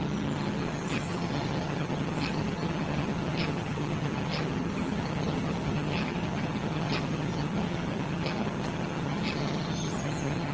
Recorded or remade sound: remade